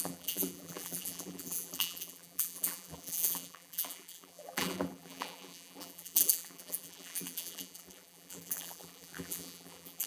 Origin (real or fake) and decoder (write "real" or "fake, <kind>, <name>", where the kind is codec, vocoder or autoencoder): fake, vocoder, BigVGAN v2